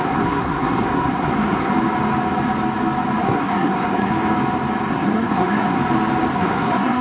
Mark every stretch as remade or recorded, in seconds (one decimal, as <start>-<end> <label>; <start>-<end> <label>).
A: 0.0-1.7 remade; 1.7-3.2 recorded; 3.2-4.1 remade; 4.1-4.9 recorded; 4.9-5.8 remade; 5.8-6.3 recorded; 6.3-7.0 remade